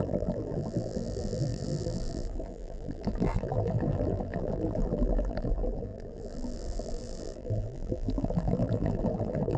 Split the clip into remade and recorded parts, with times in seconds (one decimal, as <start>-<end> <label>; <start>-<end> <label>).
0.0-9.6 remade